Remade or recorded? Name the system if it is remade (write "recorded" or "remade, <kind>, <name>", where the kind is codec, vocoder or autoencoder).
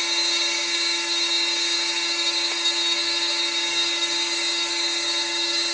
remade, codec, DAC